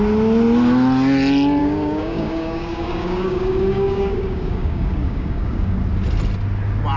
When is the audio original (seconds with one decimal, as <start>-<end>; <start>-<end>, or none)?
0.0-1.6; 5.8-7.0